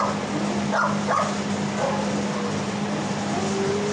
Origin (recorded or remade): recorded